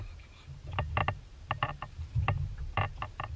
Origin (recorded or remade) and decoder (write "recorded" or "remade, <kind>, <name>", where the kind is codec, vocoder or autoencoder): remade, vocoder, BigVGAN v2